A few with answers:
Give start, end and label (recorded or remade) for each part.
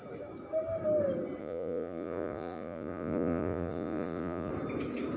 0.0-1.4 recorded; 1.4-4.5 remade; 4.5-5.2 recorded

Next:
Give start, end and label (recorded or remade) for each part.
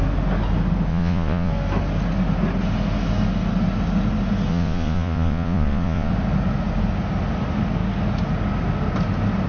0.0-0.9 recorded; 0.9-1.5 remade; 1.5-4.5 recorded; 4.5-6.1 remade; 6.1-9.5 recorded